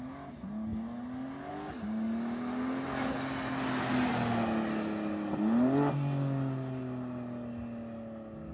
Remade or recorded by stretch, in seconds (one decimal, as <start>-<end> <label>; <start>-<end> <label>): 0.0-8.5 recorded